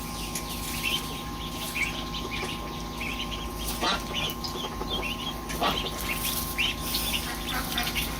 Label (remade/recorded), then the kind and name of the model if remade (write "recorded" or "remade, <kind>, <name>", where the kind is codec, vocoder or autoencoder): recorded